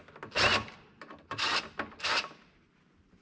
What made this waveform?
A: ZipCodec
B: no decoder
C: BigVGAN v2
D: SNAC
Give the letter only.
B